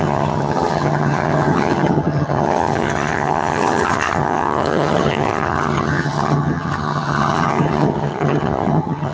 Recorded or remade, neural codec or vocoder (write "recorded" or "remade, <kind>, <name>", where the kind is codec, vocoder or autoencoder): remade, vocoder, HiFi-GAN